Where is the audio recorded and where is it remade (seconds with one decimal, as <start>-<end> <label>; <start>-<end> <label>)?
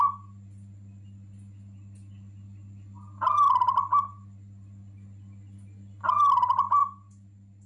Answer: 0.0-7.7 recorded